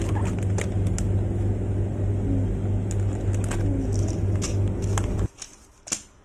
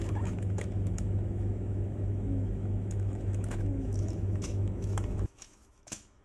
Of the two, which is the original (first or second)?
first